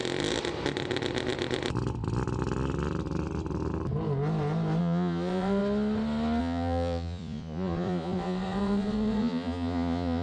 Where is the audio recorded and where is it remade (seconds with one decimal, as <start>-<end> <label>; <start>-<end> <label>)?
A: 0.0-4.8 recorded; 4.8-5.6 remade; 5.6-6.4 recorded; 6.4-10.2 remade